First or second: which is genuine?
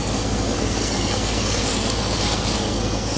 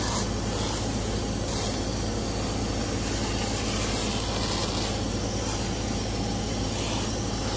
second